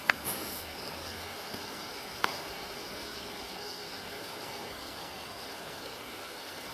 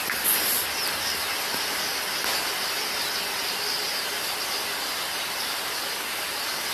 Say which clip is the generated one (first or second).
first